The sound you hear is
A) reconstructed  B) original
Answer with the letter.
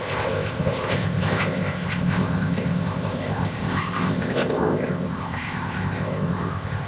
A